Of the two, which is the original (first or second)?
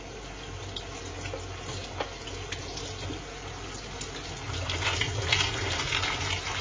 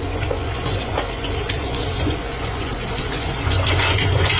first